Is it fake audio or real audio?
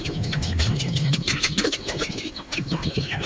fake